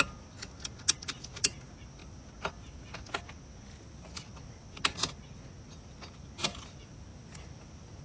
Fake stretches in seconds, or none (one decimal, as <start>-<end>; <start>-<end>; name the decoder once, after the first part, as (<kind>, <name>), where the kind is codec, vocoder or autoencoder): none